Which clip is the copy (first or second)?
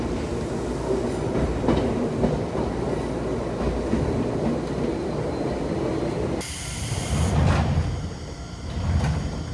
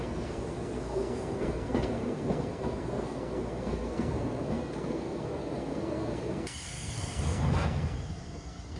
second